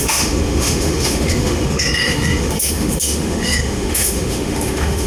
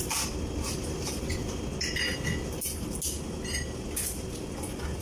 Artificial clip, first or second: first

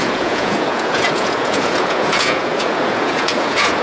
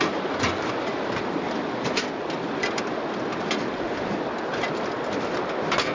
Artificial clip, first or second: first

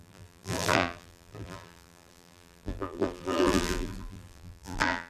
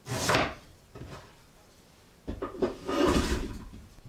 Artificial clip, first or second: first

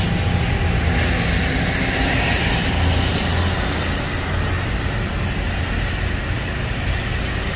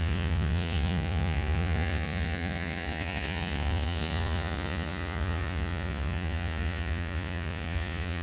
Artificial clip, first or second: second